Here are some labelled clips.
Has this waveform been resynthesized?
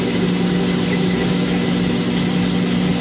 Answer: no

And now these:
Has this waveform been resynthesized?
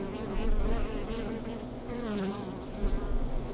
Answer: yes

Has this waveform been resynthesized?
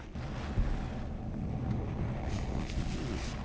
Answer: no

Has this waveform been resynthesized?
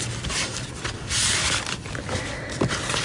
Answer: no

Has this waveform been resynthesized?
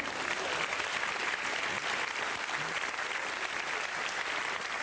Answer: no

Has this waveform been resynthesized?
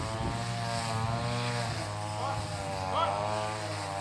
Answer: no